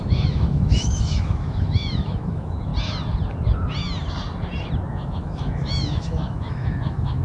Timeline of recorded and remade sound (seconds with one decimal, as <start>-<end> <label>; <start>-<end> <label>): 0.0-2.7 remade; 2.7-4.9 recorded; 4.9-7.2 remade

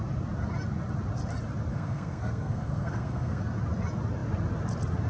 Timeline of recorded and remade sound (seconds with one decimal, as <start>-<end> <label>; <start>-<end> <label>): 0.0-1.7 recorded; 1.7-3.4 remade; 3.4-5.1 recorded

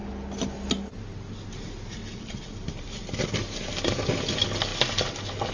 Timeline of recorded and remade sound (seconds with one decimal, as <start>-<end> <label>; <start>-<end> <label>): 0.0-5.5 recorded

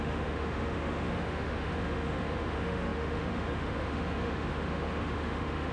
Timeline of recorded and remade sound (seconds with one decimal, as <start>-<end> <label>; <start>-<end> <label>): 0.0-5.7 remade

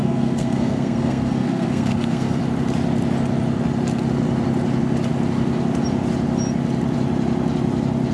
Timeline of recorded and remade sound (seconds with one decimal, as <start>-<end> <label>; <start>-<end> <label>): 0.0-2.4 remade; 2.4-8.1 recorded